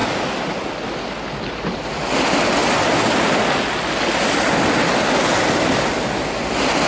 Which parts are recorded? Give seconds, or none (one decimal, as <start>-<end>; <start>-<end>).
0.0-6.9